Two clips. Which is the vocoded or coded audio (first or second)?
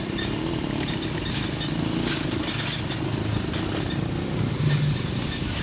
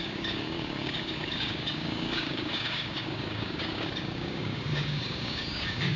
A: second